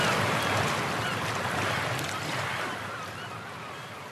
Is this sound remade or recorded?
recorded